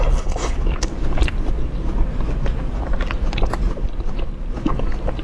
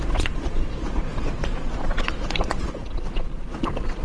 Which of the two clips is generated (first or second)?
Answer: second